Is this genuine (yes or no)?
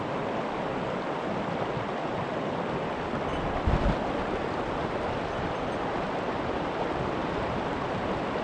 yes